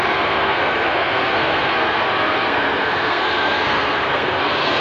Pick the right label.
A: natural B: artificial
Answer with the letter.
B